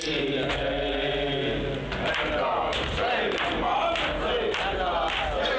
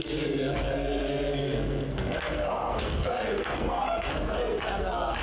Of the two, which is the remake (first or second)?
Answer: second